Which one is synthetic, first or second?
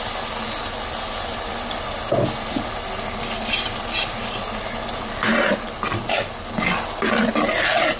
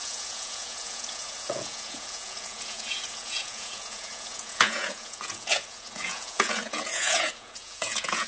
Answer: second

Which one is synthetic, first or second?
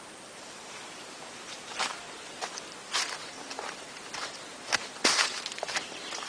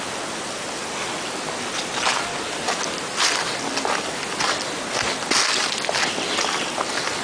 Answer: first